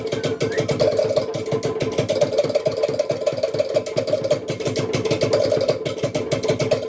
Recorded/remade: recorded